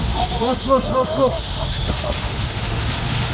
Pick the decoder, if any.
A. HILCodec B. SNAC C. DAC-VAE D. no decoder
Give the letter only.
C